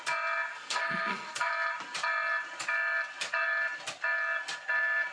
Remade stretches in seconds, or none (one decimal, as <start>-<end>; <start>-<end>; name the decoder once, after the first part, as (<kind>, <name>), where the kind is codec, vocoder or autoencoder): 0.5-1.5 (codec, SNAC)

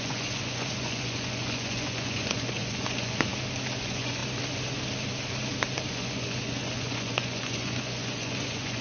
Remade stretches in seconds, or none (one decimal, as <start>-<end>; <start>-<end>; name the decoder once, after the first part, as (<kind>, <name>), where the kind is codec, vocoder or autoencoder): 0.0-3.3 (vocoder, Vocos); 3.8-4.2; 5.9-8.8

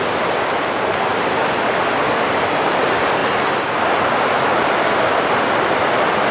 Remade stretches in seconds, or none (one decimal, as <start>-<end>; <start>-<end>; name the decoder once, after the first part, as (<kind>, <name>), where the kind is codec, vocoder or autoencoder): 3.2-3.7 (vocoder, BigVGAN v2)

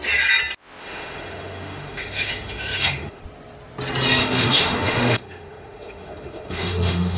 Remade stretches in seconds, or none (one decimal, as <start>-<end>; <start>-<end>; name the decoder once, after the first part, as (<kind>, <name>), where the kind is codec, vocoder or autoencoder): 0.8-3.2 (autoencoder, DAC-VAE); 4.2-7.2

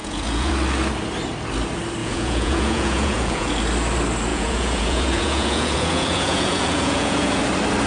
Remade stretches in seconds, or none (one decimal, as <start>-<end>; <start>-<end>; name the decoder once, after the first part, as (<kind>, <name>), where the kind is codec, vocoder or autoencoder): 0.0-0.5 (vocoder, Vocos); 2.0-3.5; 4.3-7.4

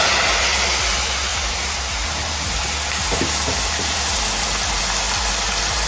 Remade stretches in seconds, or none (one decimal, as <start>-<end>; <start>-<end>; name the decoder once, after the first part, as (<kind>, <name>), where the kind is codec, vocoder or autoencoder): 1.3-4.8 (vocoder, BigVGAN v2)

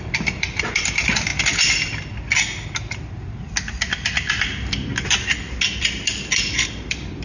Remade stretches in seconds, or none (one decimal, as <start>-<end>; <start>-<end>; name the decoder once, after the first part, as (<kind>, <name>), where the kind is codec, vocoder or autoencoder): none

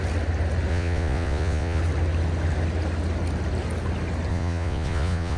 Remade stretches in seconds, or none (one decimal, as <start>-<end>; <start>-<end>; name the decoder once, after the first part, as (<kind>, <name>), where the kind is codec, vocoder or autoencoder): 0.7-1.8 (vocoder, Vocos); 4.3-5.4